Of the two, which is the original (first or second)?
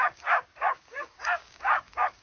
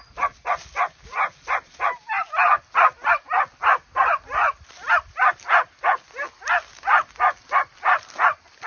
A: second